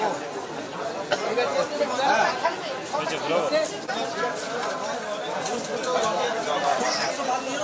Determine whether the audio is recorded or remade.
recorded